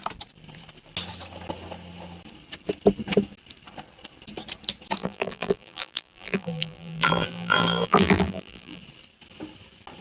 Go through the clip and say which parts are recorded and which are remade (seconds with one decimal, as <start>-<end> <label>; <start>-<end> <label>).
0.0-5.0 recorded; 5.0-8.8 remade; 8.8-10.0 recorded